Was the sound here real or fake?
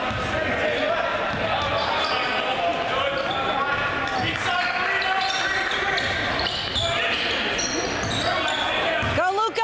real